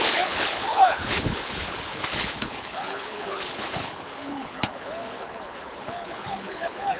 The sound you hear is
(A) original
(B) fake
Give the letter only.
B